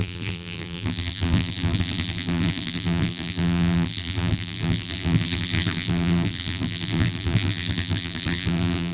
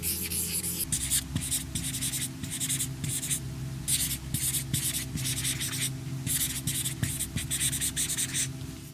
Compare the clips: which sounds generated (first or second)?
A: first